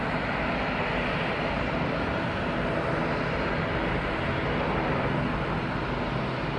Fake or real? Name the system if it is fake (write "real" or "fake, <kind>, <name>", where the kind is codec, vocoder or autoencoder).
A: real